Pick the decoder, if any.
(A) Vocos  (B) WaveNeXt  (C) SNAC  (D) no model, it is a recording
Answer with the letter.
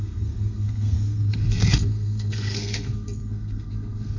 C